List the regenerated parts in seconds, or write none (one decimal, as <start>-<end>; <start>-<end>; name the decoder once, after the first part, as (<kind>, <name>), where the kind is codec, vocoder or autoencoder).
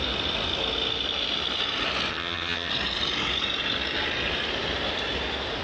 2.1-2.7 (vocoder, HiFi-GAN)